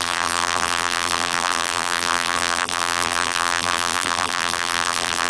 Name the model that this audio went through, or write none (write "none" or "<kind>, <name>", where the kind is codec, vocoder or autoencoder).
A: vocoder, BigVGAN v2